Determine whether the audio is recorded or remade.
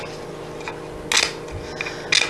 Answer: recorded